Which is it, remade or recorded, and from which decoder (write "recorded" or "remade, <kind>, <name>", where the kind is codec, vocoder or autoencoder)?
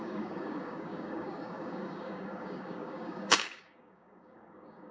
remade, codec, DAC